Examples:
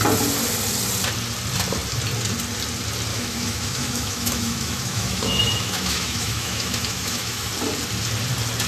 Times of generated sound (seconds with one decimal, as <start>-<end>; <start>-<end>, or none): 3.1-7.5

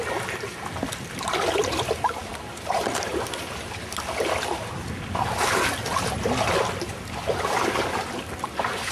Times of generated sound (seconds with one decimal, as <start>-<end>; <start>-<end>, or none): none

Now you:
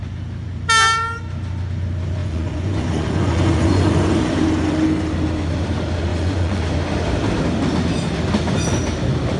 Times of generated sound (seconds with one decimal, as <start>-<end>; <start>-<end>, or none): 2.2-4.3; 6.1-6.6